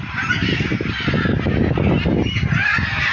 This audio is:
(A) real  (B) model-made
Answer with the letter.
A